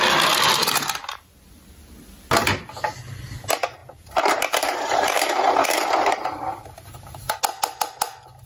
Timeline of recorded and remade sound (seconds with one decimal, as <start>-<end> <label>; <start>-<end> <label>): 0.0-3.8 recorded; 3.8-7.4 remade; 7.4-8.5 recorded